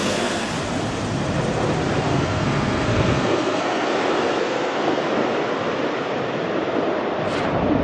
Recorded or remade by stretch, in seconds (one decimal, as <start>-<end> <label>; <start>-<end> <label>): 0.0-0.5 remade; 0.5-2.1 recorded; 2.1-3.9 remade; 3.9-4.4 recorded; 4.4-5.0 remade; 5.0-7.8 recorded

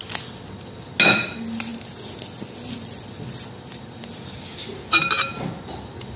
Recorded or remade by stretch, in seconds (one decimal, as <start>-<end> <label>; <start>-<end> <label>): 0.0-6.2 recorded

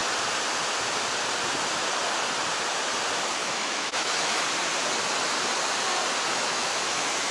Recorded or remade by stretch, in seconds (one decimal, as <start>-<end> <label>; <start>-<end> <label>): 0.0-3.4 recorded; 3.4-4.4 remade; 4.4-6.3 recorded; 6.3-7.3 remade

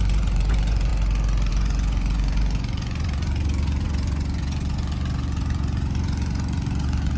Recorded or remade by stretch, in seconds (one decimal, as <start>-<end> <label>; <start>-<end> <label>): 0.0-0.9 remade; 0.9-1.5 recorded; 1.5-7.2 remade

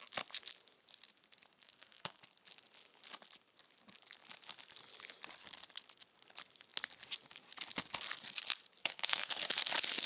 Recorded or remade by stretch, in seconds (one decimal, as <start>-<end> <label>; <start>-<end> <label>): 0.0-1.6 recorded; 1.6-2.2 remade; 2.2-8.8 recorded; 8.8-9.7 remade; 9.7-10.1 recorded